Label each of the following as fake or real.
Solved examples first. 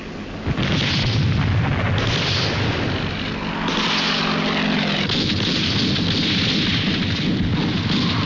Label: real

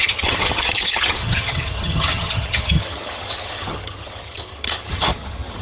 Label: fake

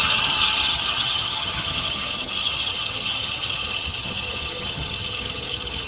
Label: fake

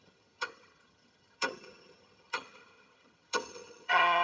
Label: fake